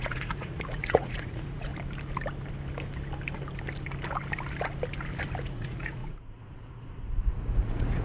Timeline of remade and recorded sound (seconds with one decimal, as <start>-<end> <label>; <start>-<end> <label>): 0.0-1.7 remade; 1.7-5.4 recorded; 5.4-8.0 remade